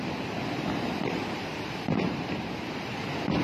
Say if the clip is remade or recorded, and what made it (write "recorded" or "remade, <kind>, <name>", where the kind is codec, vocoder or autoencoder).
remade, vocoder, BigVGAN v2